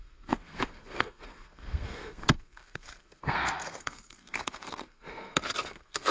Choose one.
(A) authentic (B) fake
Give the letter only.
B